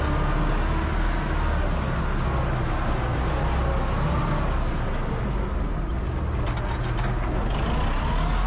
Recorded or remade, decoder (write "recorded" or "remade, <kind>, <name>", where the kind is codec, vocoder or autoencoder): recorded